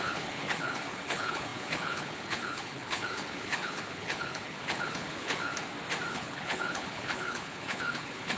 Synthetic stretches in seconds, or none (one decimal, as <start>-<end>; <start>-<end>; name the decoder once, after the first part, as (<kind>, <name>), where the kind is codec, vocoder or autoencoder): 0.0-5.5 (codec, HILCodec); 6.1-8.4